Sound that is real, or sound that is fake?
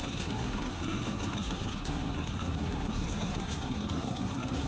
fake